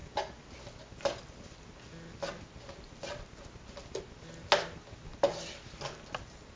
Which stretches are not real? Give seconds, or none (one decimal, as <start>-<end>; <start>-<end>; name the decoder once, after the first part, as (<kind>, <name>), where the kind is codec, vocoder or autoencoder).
none